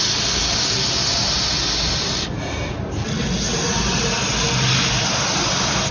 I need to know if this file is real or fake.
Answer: real